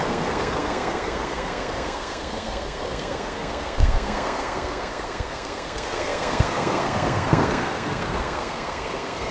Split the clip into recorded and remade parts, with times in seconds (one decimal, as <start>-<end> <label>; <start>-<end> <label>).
0.0-9.3 remade